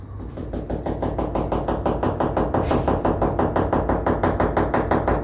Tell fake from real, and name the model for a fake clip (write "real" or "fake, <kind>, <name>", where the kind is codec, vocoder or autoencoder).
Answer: real